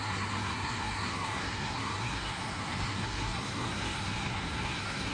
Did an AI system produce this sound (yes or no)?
yes